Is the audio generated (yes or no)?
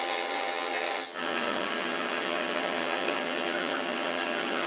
yes